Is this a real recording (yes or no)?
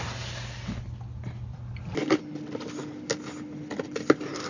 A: yes